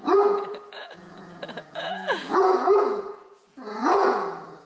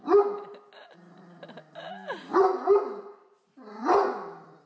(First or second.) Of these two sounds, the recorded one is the second